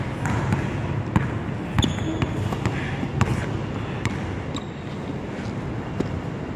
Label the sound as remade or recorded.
recorded